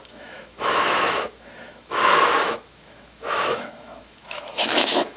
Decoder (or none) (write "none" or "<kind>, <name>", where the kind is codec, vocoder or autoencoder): autoencoder, DAC-VAE